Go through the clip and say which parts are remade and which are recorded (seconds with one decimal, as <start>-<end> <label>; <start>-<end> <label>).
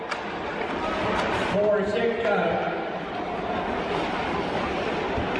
0.0-4.2 recorded; 4.2-4.9 remade; 4.9-5.4 recorded